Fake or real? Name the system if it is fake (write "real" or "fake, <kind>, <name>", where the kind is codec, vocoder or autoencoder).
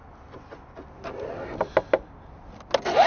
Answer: real